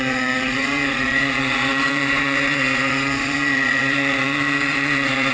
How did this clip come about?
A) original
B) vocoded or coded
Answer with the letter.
B